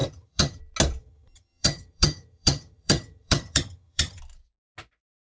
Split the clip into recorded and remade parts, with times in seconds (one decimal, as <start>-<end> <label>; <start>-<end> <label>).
0.0-0.6 remade; 0.6-1.0 recorded; 1.0-4.2 remade; 4.2-5.4 recorded